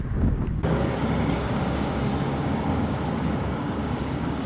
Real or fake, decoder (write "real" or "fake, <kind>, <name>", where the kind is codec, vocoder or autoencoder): fake, codec, DAC